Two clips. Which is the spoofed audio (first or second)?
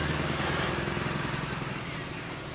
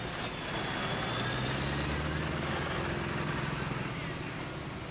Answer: first